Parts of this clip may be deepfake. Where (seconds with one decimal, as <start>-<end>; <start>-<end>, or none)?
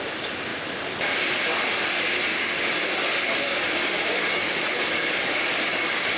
2.3-6.2